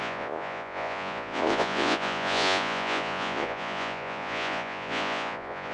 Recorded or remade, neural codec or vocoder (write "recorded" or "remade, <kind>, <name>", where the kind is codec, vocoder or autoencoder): remade, vocoder, Vocos